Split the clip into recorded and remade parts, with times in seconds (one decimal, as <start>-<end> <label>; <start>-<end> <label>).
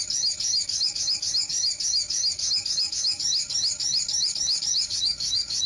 0.0-5.7 remade